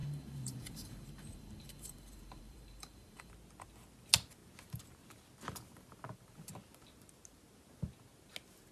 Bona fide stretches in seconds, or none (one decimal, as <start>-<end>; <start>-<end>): 3.3-8.7